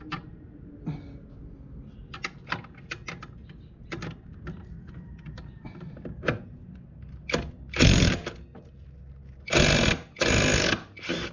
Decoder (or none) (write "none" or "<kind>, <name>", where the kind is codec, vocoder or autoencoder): none